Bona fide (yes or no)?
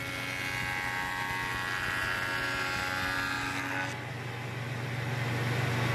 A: yes